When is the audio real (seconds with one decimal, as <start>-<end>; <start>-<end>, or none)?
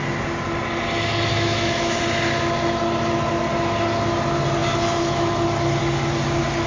0.0-1.3; 2.0-6.7